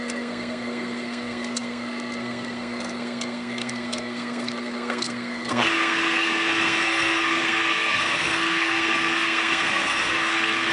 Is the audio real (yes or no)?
no